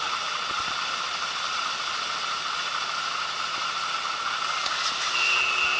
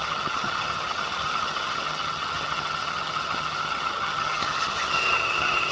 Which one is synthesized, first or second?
second